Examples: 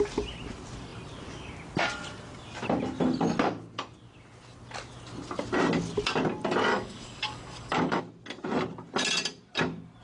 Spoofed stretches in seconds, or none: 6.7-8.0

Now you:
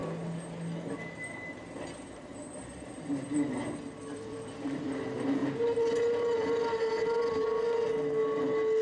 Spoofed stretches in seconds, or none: 4.1-4.9